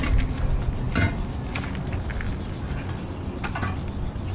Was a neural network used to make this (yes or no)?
no